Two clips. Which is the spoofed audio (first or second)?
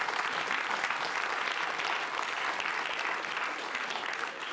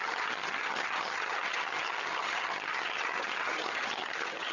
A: second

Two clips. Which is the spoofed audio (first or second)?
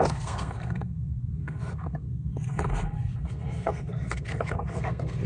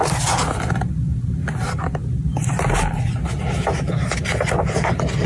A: first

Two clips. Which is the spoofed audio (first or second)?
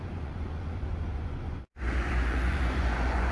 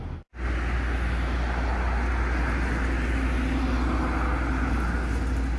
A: first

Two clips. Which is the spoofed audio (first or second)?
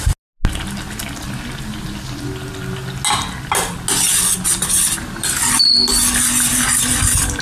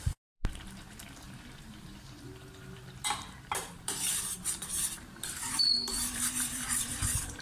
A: second